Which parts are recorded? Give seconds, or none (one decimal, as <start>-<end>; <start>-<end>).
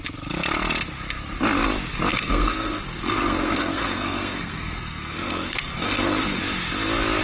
0.0-2.1; 6.4-7.2